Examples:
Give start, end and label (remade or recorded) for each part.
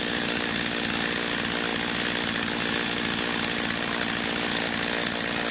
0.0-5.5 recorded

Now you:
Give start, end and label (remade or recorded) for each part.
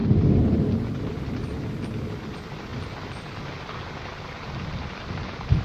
0.0-5.6 recorded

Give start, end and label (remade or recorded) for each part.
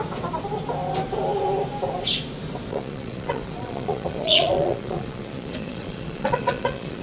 0.0-2.7 recorded; 2.7-7.0 remade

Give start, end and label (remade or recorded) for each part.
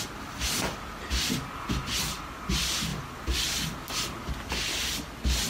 0.0-5.5 recorded